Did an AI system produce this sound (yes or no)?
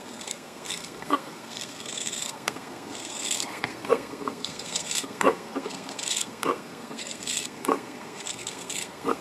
yes